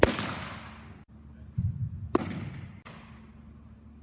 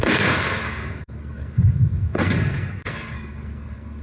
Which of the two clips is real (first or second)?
first